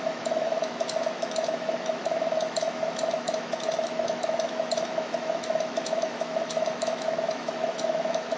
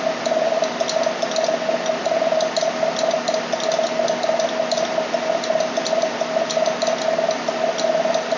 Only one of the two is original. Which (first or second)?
second